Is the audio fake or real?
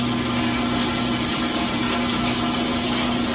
real